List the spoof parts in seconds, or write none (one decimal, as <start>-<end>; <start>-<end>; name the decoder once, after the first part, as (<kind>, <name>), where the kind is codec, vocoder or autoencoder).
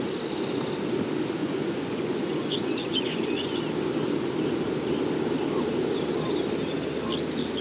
1.4-3.6 (vocoder, Vocos)